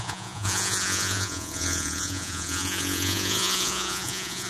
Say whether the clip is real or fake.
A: fake